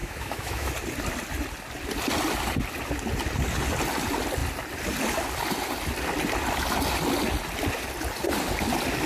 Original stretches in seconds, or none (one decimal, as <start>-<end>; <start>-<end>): 0.7-9.1